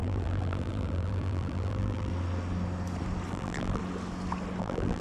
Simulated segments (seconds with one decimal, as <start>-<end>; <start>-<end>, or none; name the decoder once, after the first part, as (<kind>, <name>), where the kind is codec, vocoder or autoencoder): 0.0-2.1 (vocoder, BigVGAN v2); 3.3-3.8; 4.6-5.0